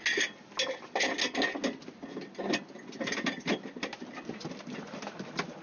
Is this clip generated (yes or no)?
no